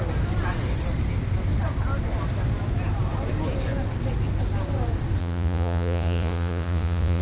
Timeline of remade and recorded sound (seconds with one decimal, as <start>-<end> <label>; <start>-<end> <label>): 0.0-5.2 recorded; 5.2-7.2 remade